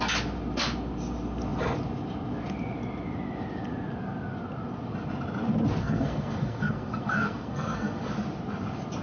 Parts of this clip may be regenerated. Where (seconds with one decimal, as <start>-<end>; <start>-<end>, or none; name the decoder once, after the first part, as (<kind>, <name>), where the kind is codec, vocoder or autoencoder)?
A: 5.8-8.1 (codec, SNAC)